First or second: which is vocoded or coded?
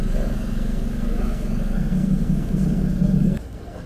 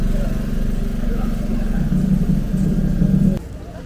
first